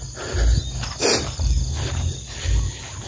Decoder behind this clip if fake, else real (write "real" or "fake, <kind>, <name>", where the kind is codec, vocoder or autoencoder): real